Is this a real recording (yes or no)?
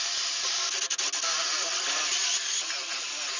yes